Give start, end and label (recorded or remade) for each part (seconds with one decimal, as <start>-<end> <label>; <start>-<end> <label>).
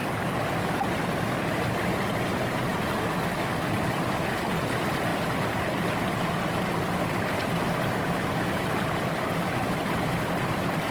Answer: 0.0-2.1 recorded; 2.1-5.1 remade; 5.1-6.2 recorded; 6.2-10.9 remade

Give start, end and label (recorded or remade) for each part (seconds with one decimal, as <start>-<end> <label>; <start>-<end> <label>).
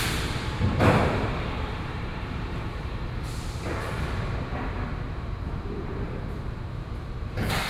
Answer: 0.0-4.5 remade; 4.5-5.4 recorded; 5.4-7.7 remade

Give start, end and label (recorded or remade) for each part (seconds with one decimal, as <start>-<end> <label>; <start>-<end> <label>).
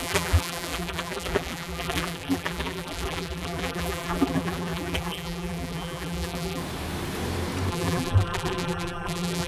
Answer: 0.0-6.6 remade; 6.6-7.7 recorded; 7.7-9.5 remade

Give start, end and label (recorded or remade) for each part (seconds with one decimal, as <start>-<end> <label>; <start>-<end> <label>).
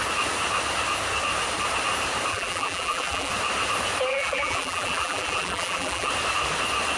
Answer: 0.0-2.3 recorded; 2.3-3.3 remade; 3.3-4.1 recorded; 4.1-6.1 remade; 6.1-7.0 recorded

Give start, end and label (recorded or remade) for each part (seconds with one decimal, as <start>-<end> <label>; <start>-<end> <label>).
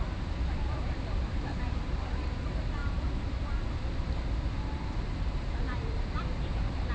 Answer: 0.0-2.8 remade; 2.8-4.7 recorded; 4.7-6.9 remade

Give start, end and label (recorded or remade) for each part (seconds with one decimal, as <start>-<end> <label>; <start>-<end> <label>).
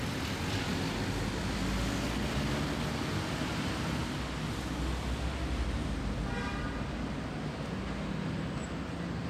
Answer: 0.0-9.3 recorded